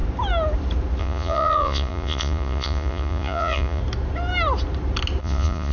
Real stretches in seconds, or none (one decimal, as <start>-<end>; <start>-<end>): 0.0-1.0; 3.8-5.2